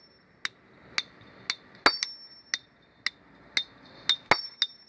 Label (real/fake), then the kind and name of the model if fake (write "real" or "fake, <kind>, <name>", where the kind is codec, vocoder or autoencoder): real